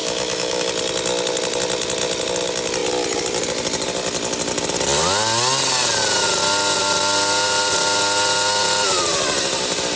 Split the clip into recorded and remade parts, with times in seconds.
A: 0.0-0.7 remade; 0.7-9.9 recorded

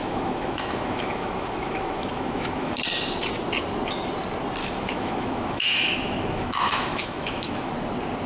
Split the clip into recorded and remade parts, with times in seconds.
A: 0.0-2.8 remade; 2.8-4.6 recorded; 4.6-7.7 remade; 7.7-8.3 recorded

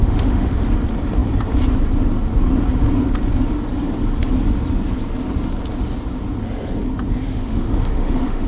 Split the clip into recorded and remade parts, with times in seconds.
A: 0.0-0.7 remade; 0.7-7.3 recorded; 7.3-8.5 remade

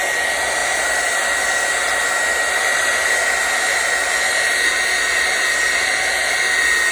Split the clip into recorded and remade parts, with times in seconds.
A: 0.0-6.9 recorded

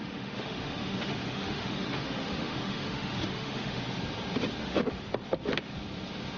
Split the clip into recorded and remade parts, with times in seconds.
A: 0.0-3.8 remade; 3.8-4.6 recorded; 4.6-5.1 remade; 5.1-6.4 recorded

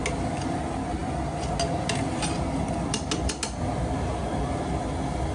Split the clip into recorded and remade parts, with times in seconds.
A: 0.0-5.3 recorded

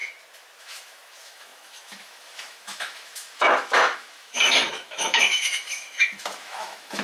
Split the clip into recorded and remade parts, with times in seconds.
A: 0.0-0.6 recorded; 0.6-7.0 remade